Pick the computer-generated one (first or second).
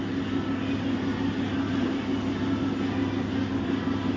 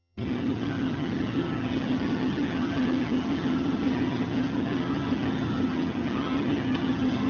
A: second